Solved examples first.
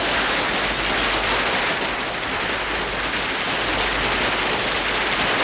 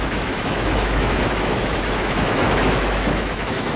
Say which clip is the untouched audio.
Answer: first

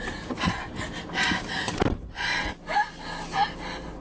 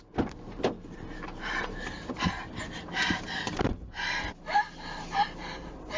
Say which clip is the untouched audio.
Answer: first